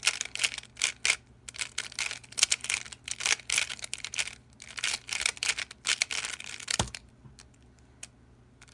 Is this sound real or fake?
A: real